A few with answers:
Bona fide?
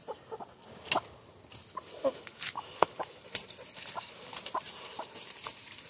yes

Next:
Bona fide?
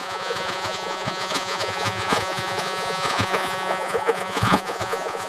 no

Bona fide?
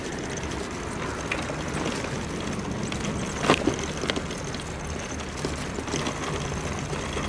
yes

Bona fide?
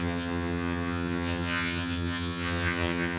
no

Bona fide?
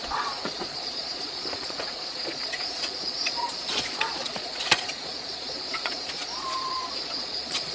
no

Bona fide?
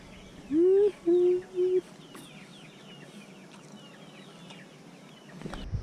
yes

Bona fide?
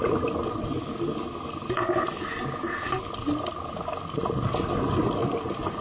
yes